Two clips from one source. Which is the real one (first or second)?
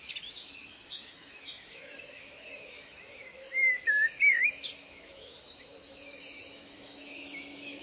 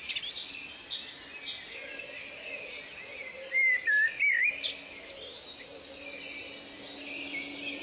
second